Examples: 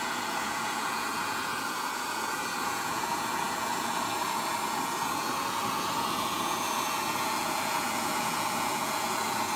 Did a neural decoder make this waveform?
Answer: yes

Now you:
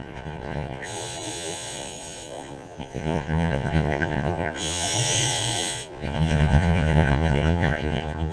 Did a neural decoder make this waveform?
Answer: yes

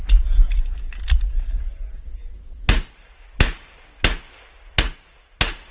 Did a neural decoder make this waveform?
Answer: no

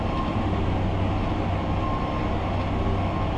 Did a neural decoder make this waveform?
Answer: no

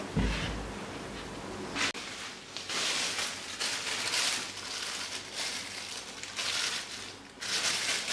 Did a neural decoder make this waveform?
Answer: no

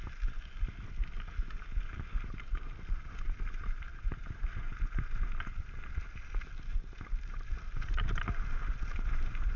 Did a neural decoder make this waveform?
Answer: no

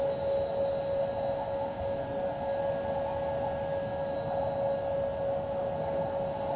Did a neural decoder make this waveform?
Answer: no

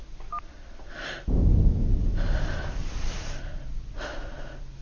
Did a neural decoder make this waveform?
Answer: no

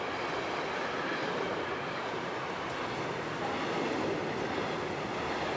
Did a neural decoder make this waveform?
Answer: no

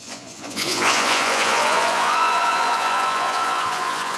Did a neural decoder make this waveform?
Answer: yes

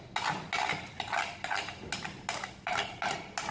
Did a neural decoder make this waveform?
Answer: no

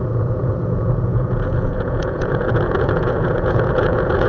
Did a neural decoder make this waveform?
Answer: yes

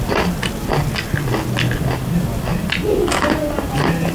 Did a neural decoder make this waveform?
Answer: no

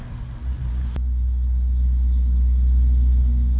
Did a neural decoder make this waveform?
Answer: no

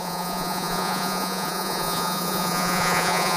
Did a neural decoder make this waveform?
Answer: yes